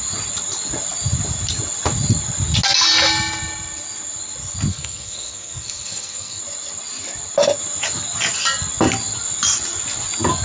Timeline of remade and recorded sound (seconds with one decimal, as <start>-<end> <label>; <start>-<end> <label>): 0.0-4.7 recorded; 4.7-6.4 remade; 6.4-10.4 recorded